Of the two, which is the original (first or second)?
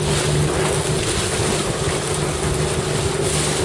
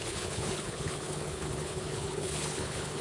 first